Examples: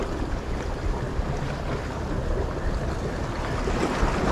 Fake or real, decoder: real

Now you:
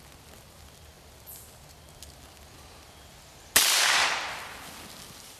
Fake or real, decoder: real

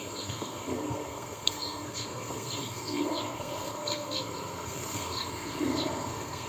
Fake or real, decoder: fake, codec, SNAC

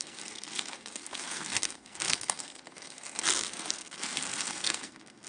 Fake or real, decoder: fake, codec, SNAC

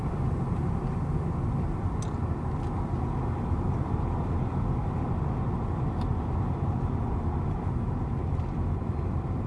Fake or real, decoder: real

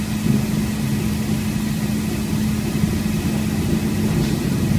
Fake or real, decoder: real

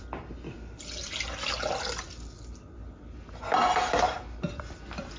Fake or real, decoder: real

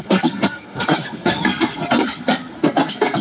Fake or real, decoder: fake, codec, SNAC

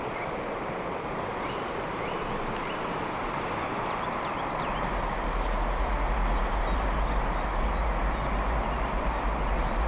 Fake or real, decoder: real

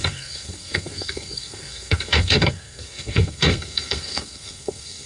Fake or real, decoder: fake, codec, SNAC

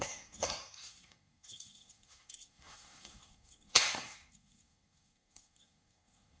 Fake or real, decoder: fake, codec, SNAC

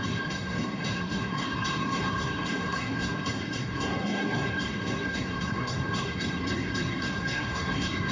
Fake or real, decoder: fake, codec, SNAC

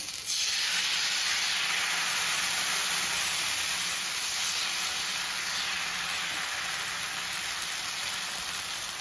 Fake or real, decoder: real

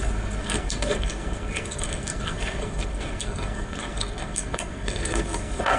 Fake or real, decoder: fake, codec, SNAC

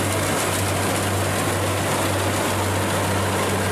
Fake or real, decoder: real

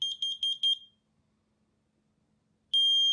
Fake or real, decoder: real